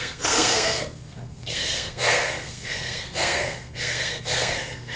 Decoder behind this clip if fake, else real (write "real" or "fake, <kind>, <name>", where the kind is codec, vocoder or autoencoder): fake, codec, SNAC